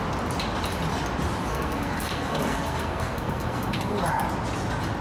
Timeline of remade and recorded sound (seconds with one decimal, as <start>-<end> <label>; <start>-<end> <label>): 0.0-1.4 recorded; 1.4-4.0 remade; 4.0-5.0 recorded